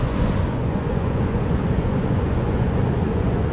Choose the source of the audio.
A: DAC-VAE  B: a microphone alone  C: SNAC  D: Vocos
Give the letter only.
D